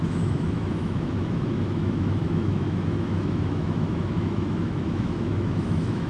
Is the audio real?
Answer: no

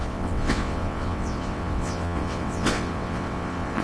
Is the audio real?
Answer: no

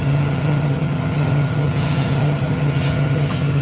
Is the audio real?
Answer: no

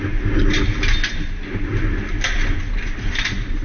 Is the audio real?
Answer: yes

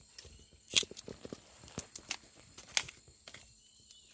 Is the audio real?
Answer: yes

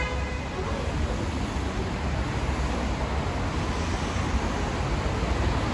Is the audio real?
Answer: yes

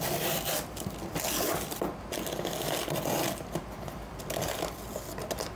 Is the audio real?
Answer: yes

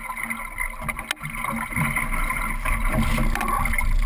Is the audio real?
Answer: yes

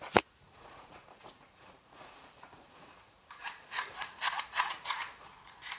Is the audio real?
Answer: no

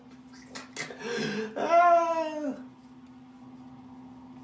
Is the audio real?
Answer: yes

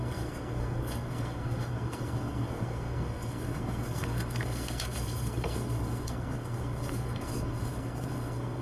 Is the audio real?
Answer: no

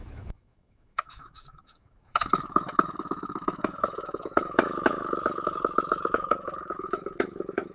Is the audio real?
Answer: no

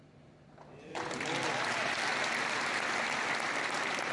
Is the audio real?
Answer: yes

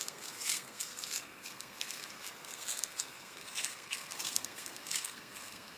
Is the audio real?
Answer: no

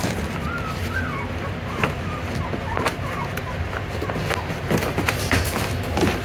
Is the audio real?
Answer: yes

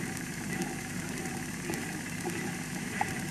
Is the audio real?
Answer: no